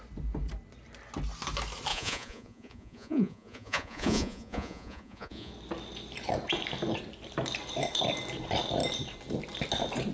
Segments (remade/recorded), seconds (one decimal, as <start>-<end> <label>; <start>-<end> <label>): 0.0-1.9 recorded; 1.9-5.5 remade; 5.5-10.1 recorded